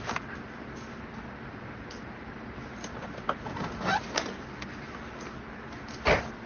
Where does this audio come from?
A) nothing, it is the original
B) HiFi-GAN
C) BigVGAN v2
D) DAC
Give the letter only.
A